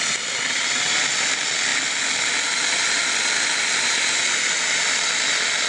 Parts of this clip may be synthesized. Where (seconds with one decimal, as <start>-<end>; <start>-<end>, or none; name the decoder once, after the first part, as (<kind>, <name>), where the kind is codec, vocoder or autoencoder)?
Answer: none